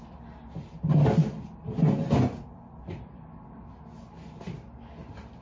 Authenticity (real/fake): real